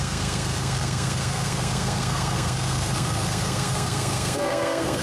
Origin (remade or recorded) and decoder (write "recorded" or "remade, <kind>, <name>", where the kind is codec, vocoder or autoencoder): remade, codec, SNAC